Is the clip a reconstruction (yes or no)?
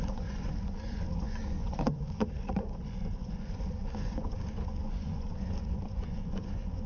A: yes